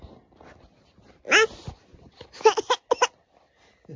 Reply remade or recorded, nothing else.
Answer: recorded